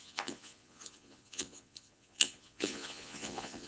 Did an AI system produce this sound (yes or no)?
yes